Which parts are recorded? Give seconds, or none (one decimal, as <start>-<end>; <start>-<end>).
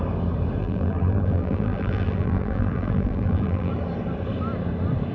0.0-0.6; 3.7-5.1